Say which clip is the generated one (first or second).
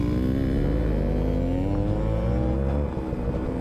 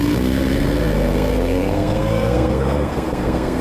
second